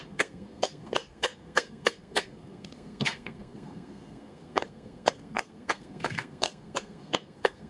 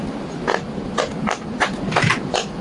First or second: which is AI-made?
first